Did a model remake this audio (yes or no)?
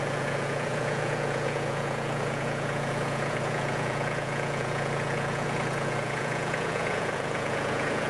yes